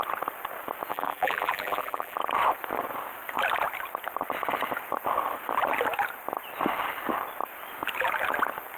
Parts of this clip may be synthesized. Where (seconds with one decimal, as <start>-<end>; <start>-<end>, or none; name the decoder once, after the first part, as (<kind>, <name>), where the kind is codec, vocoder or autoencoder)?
0.9-2.2 (vocoder, BigVGAN v2)